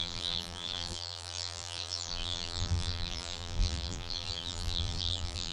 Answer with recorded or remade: remade